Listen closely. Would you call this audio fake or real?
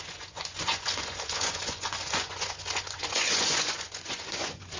fake